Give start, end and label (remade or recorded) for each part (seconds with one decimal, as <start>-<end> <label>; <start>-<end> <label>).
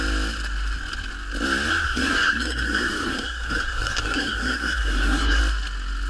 0.0-1.7 recorded; 1.7-5.4 remade; 5.4-6.1 recorded